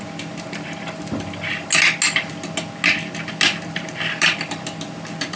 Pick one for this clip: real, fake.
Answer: real